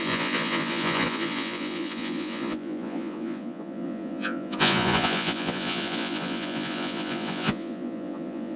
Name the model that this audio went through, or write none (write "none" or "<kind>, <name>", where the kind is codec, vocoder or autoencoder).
vocoder, Vocos